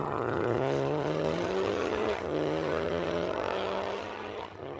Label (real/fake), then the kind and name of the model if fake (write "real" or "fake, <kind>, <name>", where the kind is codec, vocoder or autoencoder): fake, vocoder, HiFi-GAN